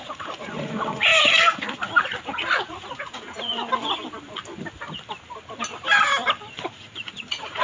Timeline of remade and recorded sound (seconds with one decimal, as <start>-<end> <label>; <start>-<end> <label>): 0.0-1.1 remade; 1.1-2.7 recorded; 2.7-3.5 remade; 3.5-6.7 recorded; 6.7-7.6 remade